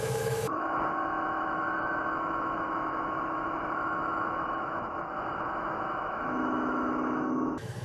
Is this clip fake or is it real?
fake